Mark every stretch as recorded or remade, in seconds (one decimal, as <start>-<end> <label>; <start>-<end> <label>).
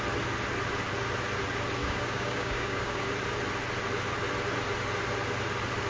0.0-1.8 recorded; 1.8-3.0 remade; 3.0-5.9 recorded